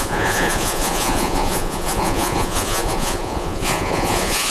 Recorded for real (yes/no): no